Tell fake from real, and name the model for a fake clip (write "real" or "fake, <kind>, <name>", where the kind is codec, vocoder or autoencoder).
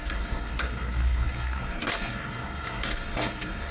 fake, codec, SNAC